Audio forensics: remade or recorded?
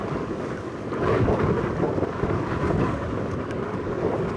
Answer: remade